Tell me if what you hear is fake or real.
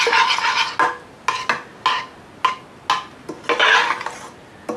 real